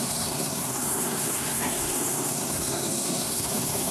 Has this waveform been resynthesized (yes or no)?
yes